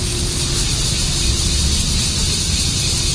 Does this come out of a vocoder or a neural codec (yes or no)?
no